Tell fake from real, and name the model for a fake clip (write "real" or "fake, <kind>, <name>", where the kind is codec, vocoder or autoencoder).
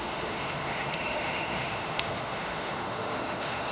fake, autoencoder, DAC-VAE